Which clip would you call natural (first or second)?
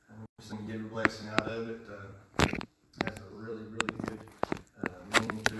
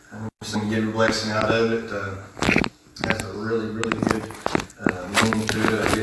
second